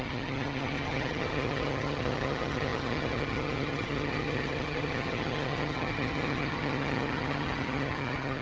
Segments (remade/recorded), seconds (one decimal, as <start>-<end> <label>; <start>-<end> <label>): 0.0-8.4 remade